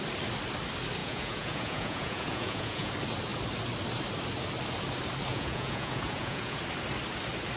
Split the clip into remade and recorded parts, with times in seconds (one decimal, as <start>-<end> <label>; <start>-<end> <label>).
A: 0.0-1.0 recorded; 1.0-2.9 remade; 2.9-5.3 recorded; 5.3-6.6 remade; 6.6-7.6 recorded

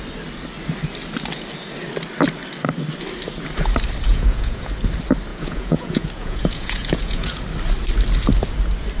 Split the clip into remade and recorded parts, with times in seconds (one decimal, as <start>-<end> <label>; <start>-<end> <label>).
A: 0.0-4.1 recorded; 4.1-4.7 remade; 4.7-5.3 recorded; 5.3-7.4 remade; 7.4-9.0 recorded

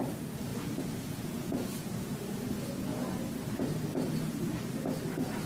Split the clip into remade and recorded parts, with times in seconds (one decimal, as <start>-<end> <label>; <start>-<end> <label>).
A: 0.0-0.5 recorded; 0.5-2.1 remade; 2.1-3.9 recorded; 3.9-4.5 remade; 4.5-5.5 recorded

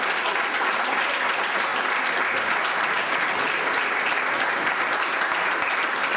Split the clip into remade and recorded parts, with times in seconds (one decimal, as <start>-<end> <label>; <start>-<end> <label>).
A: 0.0-6.2 recorded

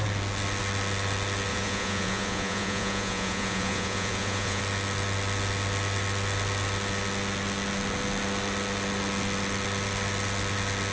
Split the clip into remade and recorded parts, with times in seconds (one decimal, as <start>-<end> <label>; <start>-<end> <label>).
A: 0.0-1.5 recorded; 1.5-4.6 remade; 4.6-10.9 recorded

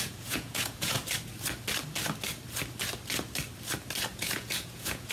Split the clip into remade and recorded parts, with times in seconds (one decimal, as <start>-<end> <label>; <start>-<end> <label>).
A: 0.0-1.0 remade; 1.0-4.1 recorded; 4.1-5.1 remade